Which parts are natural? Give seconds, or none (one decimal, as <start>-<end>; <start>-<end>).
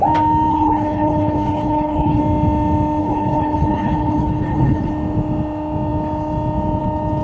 0.0-0.5; 2.2-3.0; 4.9-7.2